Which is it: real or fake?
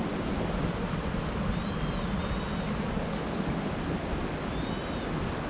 real